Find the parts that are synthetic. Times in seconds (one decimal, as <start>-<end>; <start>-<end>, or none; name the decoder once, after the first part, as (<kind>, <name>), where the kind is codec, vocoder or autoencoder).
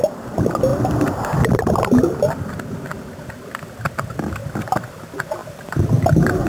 0.7-2.5 (vocoder, BigVGAN v2); 4.4-4.9